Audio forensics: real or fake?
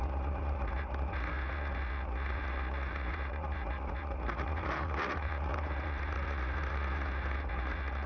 fake